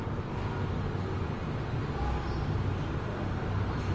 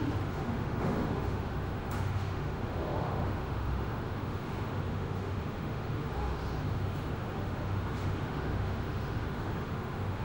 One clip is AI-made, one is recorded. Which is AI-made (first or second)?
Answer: second